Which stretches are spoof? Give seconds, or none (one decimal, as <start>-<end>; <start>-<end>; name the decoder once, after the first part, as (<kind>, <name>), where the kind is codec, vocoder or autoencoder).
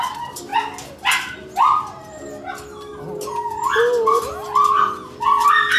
none